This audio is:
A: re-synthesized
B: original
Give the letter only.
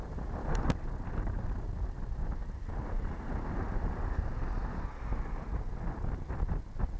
B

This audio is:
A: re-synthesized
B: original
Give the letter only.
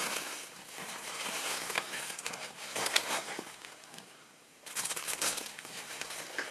A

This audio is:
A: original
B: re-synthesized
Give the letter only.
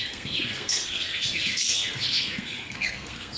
B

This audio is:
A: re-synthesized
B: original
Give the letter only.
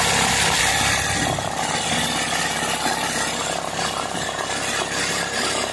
A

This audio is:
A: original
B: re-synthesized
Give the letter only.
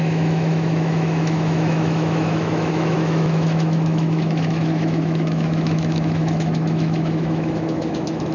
B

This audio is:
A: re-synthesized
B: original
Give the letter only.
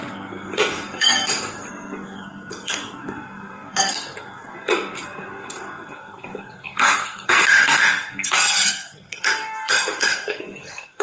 A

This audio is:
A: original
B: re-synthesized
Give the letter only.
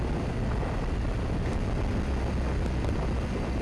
A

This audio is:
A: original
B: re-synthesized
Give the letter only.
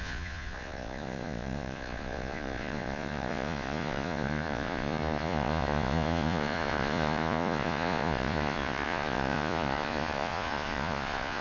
B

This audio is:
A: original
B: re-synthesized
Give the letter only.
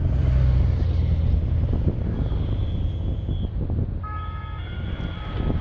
A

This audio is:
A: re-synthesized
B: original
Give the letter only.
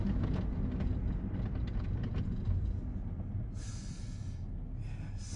B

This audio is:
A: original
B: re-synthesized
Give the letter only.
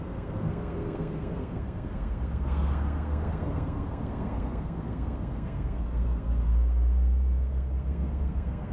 B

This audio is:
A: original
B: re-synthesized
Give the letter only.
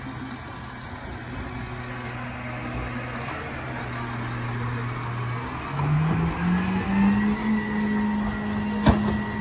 A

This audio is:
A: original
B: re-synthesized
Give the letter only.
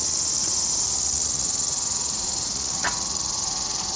B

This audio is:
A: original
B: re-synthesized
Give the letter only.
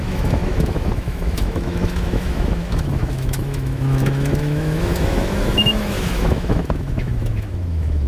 B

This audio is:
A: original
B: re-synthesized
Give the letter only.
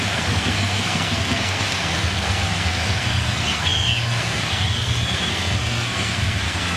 B